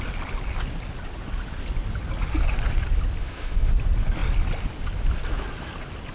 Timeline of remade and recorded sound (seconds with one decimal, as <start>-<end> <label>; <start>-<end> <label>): 0.0-3.2 recorded; 3.2-3.7 remade; 3.7-6.1 recorded